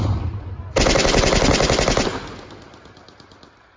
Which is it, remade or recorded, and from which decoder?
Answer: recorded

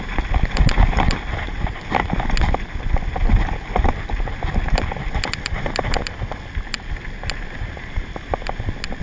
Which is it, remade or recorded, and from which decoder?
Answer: recorded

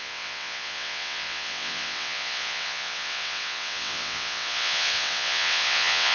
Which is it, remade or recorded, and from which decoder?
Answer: remade, vocoder, WaveNeXt